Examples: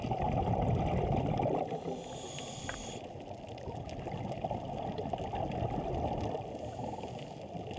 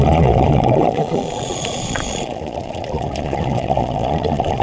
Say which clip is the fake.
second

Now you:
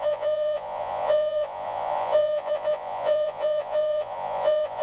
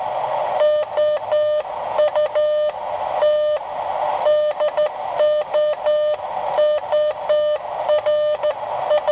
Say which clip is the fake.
first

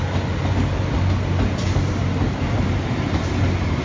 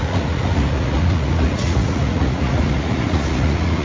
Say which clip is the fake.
second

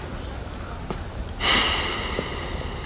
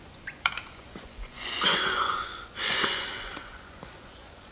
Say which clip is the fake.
second